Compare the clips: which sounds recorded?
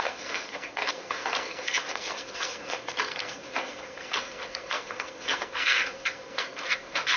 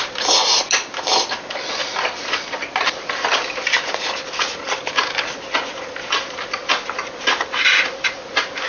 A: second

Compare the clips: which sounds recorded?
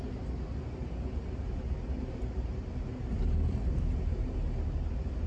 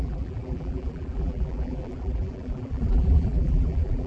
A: first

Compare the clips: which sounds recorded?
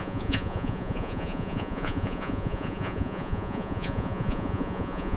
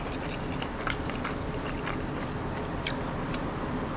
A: second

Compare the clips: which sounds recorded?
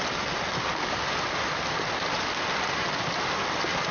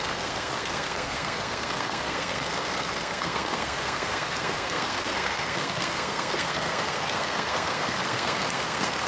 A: first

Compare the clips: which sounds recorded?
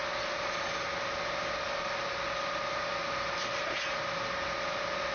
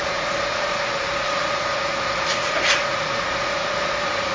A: first